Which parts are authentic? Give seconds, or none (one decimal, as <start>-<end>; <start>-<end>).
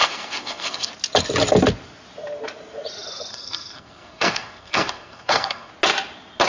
0.9-3.3; 5.7-6.5